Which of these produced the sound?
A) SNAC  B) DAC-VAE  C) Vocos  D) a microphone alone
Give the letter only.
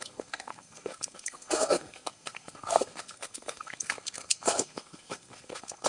A